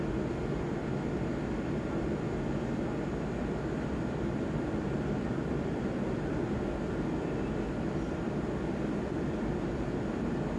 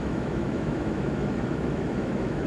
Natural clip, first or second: first